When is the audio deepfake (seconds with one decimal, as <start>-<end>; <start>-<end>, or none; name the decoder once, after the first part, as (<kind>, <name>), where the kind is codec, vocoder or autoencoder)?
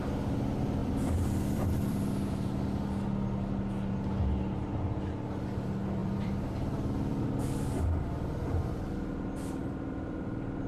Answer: 0.8-2.1 (vocoder, BigVGAN v2); 6.0-8.7; 9.6-10.7